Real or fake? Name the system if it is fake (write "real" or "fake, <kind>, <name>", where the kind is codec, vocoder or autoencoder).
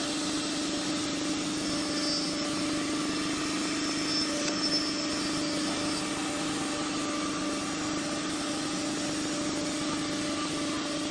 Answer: real